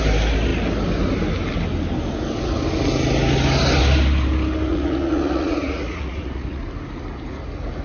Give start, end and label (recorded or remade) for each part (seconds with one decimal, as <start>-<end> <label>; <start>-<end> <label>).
0.0-4.7 recorded; 4.7-6.6 remade; 6.6-7.8 recorded